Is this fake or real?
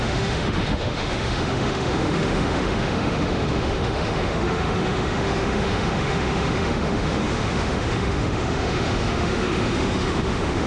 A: fake